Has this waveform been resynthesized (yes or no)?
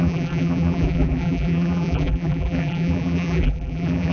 yes